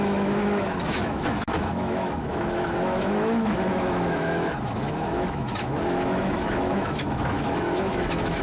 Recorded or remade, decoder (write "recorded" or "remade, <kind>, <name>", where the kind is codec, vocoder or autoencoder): remade, autoencoder, DAC-VAE